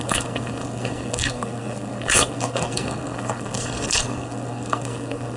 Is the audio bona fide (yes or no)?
no